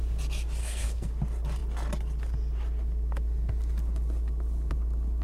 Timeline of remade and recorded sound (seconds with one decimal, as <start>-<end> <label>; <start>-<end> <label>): 0.0-0.6 recorded; 0.6-1.1 remade; 1.1-5.2 recorded